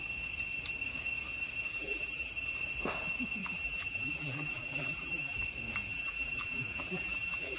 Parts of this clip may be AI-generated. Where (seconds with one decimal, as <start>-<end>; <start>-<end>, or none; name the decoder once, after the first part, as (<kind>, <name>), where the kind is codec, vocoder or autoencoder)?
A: 1.7-2.3 (vocoder, BigVGAN v2); 3.4-5.4; 5.9-7.6